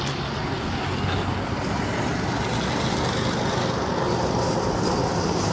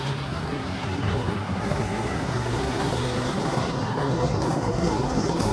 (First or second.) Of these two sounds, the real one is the first